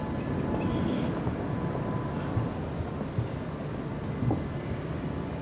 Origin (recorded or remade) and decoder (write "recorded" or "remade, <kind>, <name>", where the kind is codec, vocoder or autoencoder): recorded